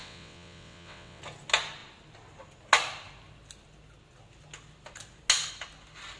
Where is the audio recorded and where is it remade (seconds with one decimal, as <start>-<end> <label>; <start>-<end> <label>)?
0.0-1.2 remade; 1.2-6.2 recorded

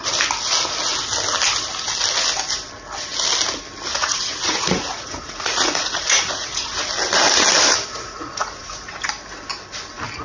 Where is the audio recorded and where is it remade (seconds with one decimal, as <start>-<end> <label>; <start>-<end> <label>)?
0.0-3.9 recorded; 3.9-6.8 remade; 6.8-7.9 recorded; 7.9-9.0 remade; 9.0-10.2 recorded